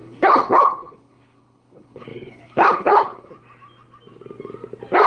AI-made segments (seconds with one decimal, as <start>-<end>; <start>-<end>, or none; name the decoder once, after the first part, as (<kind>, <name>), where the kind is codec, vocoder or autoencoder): 0.0-3.3 (codec, HILCodec)